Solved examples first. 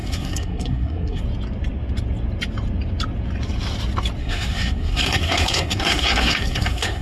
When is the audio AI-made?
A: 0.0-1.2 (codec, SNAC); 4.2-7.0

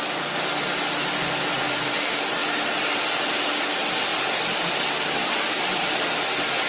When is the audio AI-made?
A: none

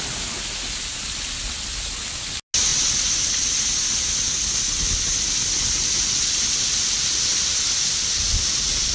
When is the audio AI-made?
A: none

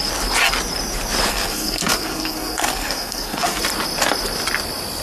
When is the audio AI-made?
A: 1.3-3.6 (codec, SNAC)

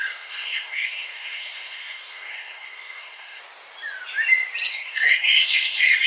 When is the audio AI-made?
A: 0.0-3.4 (codec, SNAC); 4.7-6.1

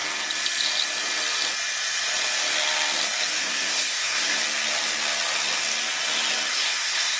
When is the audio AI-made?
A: 3.4-4.4 (codec, SNAC); 6.5-7.2

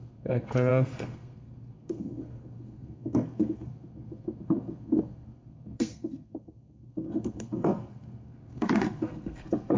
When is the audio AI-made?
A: 0.0-9.8 (codec, SNAC)